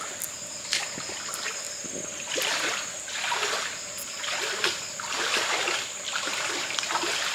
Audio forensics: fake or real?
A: real